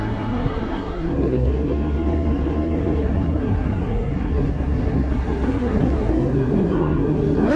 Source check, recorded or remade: remade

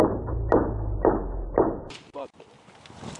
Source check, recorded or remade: recorded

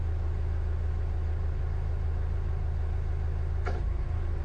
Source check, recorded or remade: recorded